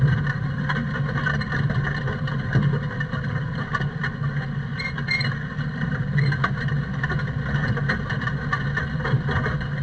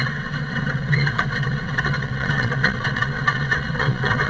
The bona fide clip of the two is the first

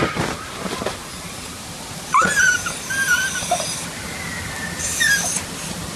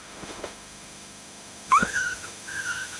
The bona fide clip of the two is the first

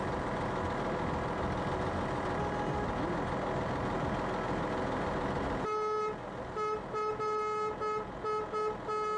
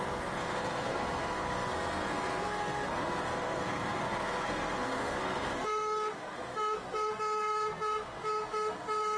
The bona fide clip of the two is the first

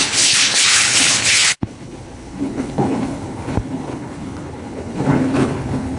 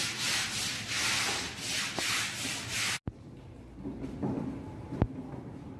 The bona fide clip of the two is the second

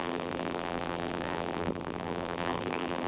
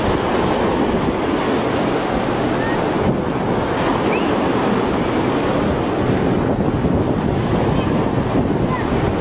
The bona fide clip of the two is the second